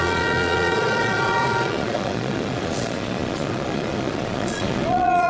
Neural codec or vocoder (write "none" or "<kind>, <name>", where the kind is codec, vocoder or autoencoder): vocoder, Vocos